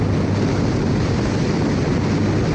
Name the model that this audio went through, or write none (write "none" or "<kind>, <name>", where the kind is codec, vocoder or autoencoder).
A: none